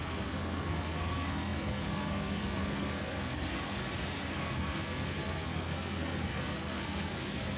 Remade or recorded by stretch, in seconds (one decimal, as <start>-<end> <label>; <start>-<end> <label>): 0.0-3.8 remade; 3.8-4.3 recorded; 4.3-7.6 remade